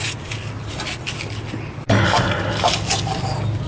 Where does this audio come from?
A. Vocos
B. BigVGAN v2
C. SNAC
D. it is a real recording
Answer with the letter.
D